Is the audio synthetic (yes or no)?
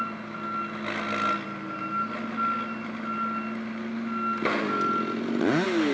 no